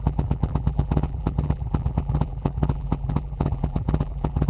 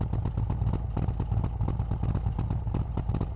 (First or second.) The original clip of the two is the second